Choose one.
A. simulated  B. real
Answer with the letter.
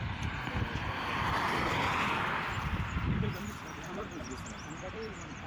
A